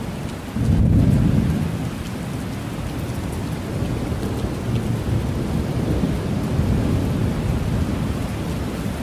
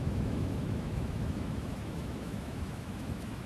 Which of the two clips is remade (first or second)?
second